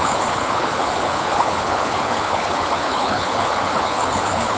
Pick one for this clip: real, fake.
fake